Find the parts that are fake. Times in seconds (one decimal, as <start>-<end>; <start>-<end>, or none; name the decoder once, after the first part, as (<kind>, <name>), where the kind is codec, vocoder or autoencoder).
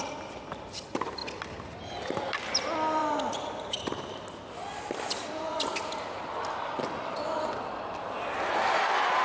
none